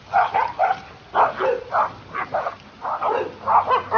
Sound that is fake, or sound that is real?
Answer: real